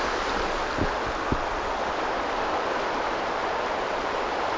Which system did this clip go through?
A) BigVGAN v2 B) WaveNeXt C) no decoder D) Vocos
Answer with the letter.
C